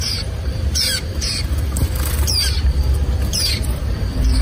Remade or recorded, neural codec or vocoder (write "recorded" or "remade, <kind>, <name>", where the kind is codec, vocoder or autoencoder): remade, vocoder, BigVGAN v2